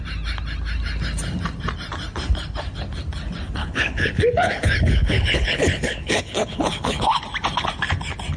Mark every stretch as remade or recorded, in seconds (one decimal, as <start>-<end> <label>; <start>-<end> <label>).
0.0-3.6 recorded; 3.6-7.2 remade; 7.2-8.4 recorded